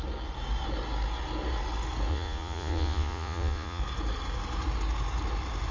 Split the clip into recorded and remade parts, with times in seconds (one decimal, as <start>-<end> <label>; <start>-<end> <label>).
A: 0.0-2.1 recorded; 2.1-3.8 remade; 3.8-5.7 recorded

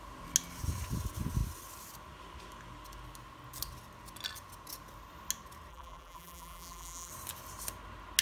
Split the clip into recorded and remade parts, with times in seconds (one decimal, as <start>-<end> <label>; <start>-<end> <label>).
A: 0.0-5.7 recorded; 5.7-7.1 remade; 7.1-8.2 recorded

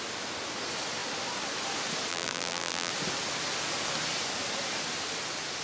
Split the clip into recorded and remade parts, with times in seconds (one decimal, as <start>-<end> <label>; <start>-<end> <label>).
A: 0.0-2.1 recorded; 2.1-2.9 remade; 2.9-5.6 recorded

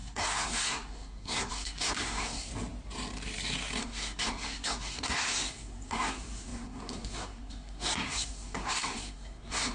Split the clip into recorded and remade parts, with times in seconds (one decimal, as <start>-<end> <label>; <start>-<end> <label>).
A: 0.0-2.5 remade; 2.5-3.8 recorded; 3.8-9.7 remade

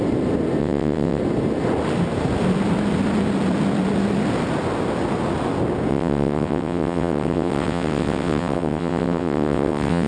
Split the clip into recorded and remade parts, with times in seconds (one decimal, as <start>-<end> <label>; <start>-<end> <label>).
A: 0.0-0.6 recorded; 0.6-1.2 remade; 1.2-5.9 recorded; 5.9-10.1 remade

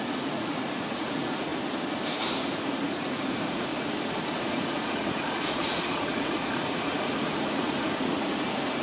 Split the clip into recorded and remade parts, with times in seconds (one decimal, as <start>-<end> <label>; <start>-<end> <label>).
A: 0.0-1.5 remade; 1.5-2.3 recorded; 2.3-3.7 remade; 3.7-4.4 recorded; 4.4-8.8 remade

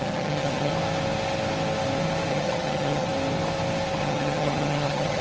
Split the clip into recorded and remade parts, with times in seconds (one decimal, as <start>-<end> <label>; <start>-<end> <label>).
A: 0.0-0.7 remade; 0.7-2.3 recorded; 2.3-3.1 remade; 3.1-4.0 recorded; 4.0-5.2 remade